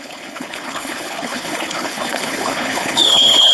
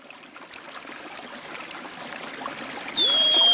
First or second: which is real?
second